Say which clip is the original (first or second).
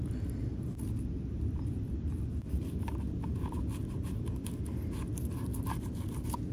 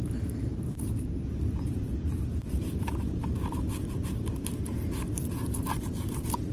first